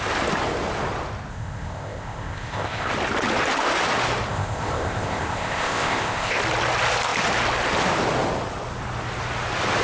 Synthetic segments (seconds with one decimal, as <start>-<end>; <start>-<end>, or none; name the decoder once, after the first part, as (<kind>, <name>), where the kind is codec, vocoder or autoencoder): 1.3-2.9 (codec, ZipCodec); 4.3-6.4

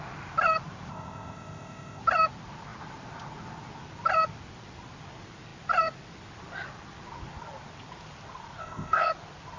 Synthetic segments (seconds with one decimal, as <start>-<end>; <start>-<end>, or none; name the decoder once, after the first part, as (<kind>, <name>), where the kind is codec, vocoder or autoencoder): 0.9-2.0 (codec, ZipCodec); 8.6-9.1

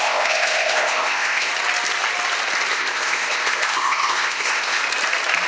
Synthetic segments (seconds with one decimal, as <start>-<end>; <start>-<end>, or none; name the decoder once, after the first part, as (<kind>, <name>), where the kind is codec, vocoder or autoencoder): 0.0-1.5 (codec, ZipCodec); 2.7-4.8

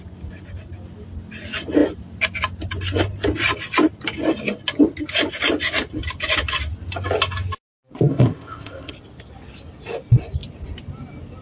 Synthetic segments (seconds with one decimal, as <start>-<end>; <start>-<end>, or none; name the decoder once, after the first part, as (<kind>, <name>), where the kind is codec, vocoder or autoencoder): 8.1-8.9 (codec, ZipCodec)

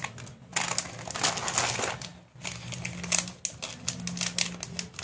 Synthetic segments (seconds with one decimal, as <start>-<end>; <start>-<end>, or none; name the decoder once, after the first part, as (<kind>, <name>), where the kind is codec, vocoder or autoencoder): none